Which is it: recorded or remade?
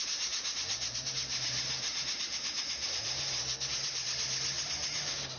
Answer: recorded